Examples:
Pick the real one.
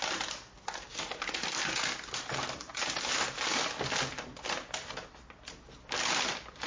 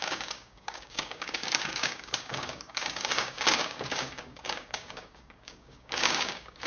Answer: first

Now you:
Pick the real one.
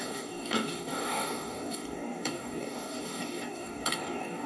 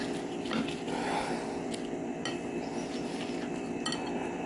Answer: second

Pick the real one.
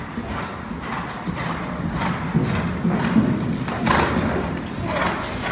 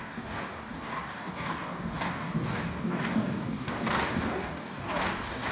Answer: first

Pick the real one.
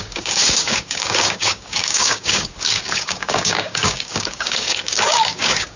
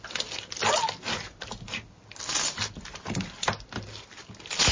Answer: second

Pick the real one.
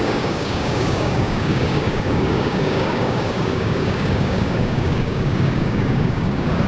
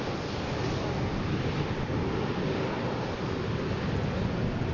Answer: second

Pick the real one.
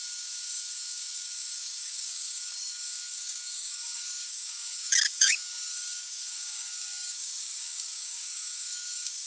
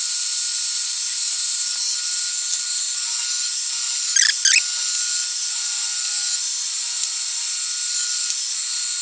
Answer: second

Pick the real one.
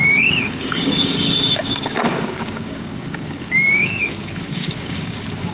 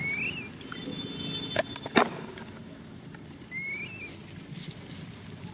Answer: second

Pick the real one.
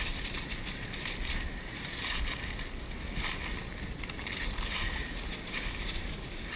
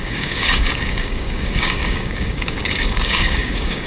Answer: first